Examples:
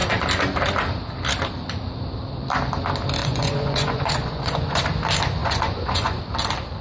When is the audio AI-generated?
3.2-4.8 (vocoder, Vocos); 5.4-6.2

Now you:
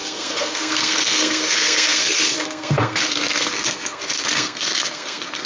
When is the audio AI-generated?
0.0-5.5 (codec, SNAC)

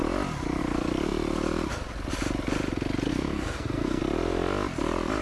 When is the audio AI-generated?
3.1-4.0 (codec, SNAC)

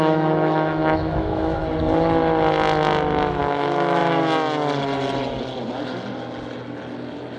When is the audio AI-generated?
0.0-1.6 (autoencoder, DAC-VAE); 3.4-4.0

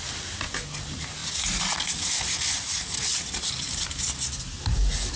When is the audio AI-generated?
none

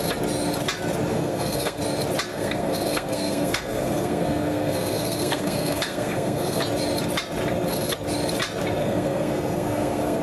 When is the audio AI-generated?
1.1-1.8 (codec, SNAC); 2.3-6.6; 8.8-10.2